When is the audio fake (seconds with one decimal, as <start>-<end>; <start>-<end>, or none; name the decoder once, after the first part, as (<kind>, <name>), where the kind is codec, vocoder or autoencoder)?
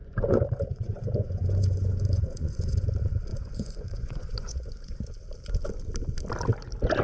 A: 0.0-2.9 (vocoder, Vocos); 3.3-5.0